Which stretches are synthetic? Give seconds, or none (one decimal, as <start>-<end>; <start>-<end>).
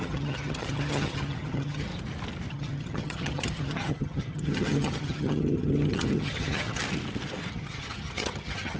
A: 0.0-1.9; 2.5-6.8; 7.5-8.8